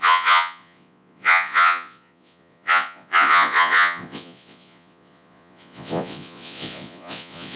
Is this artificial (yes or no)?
yes